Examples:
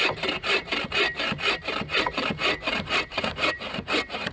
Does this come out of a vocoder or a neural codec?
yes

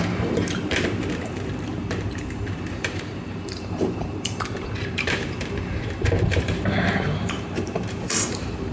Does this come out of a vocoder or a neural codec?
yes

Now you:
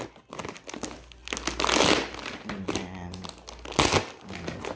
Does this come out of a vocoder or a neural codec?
no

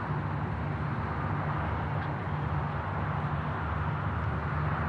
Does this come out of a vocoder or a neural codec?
no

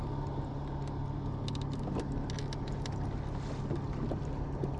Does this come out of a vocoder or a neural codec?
no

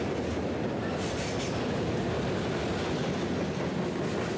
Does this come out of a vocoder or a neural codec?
no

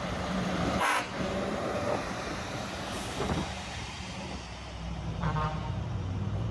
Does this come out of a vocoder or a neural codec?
yes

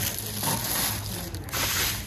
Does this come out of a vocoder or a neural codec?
no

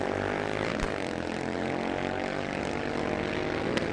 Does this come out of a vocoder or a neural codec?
no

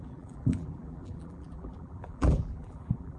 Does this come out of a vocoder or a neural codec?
yes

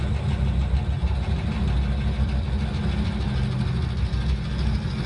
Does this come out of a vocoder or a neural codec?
no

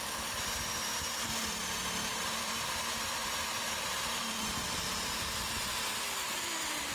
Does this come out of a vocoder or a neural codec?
yes